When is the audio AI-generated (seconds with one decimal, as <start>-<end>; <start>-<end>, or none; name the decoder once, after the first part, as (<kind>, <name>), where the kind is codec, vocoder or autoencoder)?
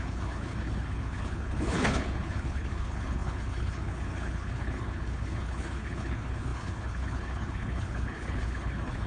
0.0-9.1 (codec, HILCodec)